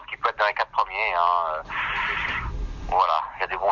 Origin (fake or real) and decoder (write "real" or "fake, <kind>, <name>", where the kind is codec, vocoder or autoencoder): real